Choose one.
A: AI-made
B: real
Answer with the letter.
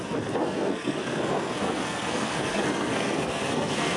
A